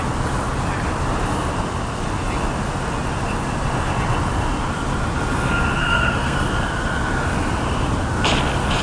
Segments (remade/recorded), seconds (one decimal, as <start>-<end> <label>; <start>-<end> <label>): 0.0-5.8 recorded; 5.8-6.4 remade; 6.4-8.8 recorded